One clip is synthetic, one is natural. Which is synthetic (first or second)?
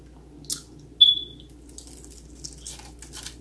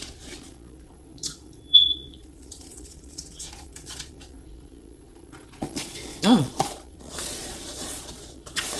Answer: second